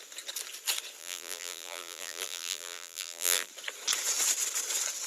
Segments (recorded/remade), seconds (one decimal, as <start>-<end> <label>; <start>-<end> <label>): 0.0-1.0 recorded; 1.0-3.5 remade; 3.5-5.1 recorded